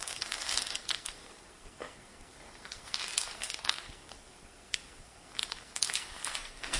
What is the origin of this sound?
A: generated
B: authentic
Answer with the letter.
A